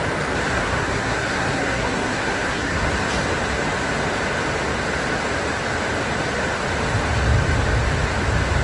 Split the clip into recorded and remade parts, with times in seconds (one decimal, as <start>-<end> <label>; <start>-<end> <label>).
0.0-0.5 recorded; 0.5-2.9 remade; 2.9-8.6 recorded